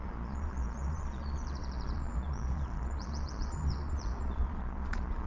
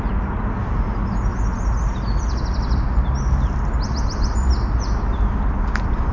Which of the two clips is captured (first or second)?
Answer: second